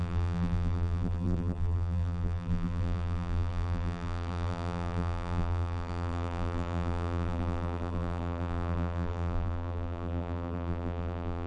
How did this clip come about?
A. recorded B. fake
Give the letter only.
B